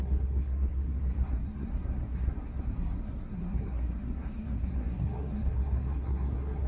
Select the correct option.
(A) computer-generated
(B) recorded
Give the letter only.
A